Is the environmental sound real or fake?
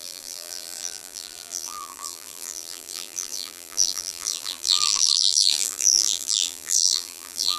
fake